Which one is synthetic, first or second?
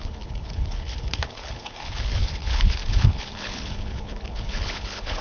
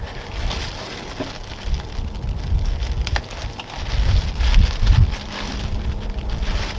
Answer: first